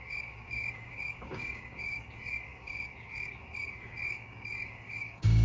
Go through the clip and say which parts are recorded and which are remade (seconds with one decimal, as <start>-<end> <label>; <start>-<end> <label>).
0.0-5.4 remade